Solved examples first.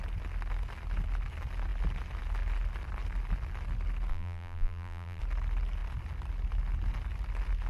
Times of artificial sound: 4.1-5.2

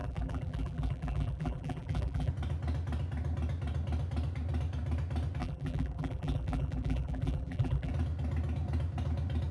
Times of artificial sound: 0.0-2.3; 5.4-7.9

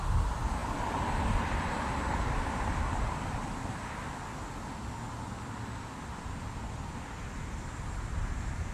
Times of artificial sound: none